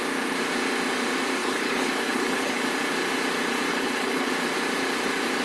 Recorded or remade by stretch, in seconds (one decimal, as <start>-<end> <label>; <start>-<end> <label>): 0.0-1.4 recorded; 1.4-2.6 remade; 2.6-3.7 recorded; 3.7-4.3 remade; 4.3-5.4 recorded